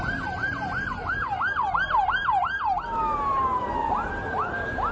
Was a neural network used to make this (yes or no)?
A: yes